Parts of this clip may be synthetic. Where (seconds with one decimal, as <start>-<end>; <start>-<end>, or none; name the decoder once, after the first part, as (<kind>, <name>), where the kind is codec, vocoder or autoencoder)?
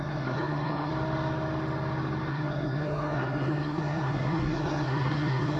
0.0-0.9 (codec, SNAC); 2.3-5.6